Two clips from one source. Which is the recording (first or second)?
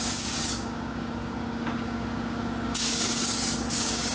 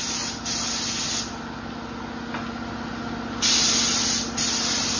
second